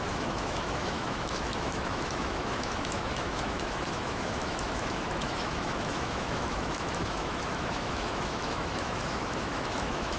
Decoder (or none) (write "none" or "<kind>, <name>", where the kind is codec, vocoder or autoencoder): autoencoder, DAC-VAE